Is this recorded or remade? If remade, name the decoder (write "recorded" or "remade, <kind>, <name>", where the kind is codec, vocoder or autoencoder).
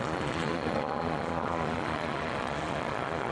remade, vocoder, Vocos